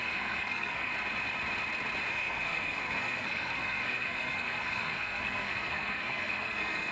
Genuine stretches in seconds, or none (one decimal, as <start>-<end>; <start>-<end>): 0.9-2.1